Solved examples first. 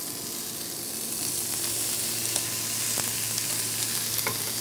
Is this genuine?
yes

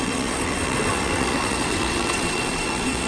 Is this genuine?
no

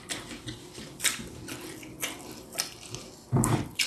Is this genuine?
no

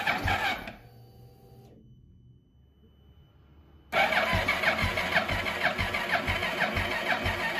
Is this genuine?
yes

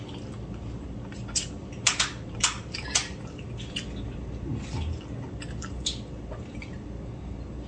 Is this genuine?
yes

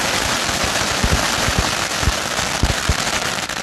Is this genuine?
yes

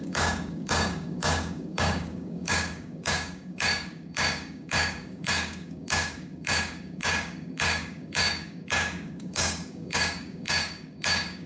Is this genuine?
no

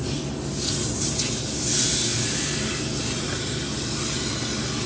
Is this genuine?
yes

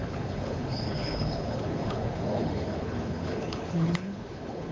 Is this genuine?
no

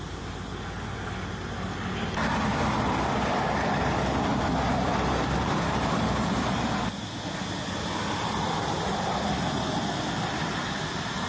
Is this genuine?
yes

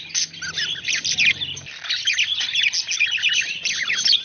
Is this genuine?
yes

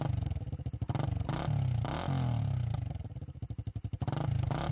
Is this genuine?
yes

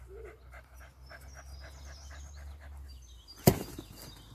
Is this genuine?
yes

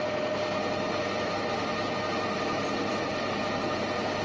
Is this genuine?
yes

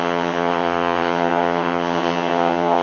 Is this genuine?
no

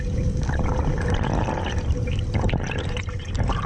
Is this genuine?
no